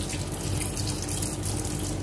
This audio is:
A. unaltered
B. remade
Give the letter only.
A